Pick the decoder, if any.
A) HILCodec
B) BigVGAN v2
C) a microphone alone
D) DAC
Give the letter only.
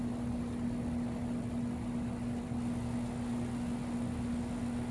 C